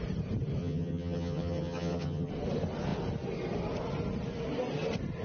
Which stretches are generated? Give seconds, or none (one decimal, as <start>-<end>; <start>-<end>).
0.6-2.3